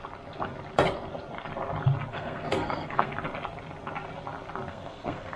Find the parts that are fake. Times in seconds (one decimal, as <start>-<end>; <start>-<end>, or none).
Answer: 2.1-3.1; 4.7-5.4